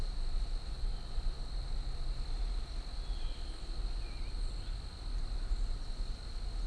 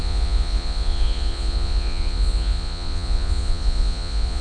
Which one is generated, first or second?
second